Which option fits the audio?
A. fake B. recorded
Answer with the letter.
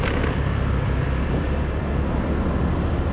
B